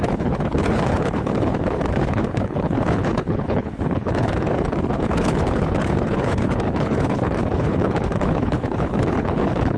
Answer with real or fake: fake